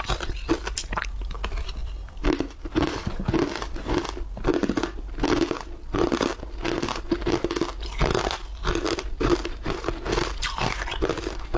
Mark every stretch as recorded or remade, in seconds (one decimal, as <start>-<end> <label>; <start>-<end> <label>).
0.0-1.8 recorded; 1.8-3.2 remade; 3.2-8.4 recorded; 8.4-9.3 remade; 9.3-11.6 recorded